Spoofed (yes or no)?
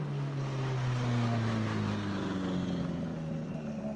no